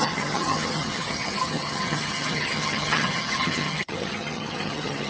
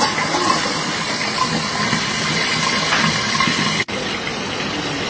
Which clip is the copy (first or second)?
first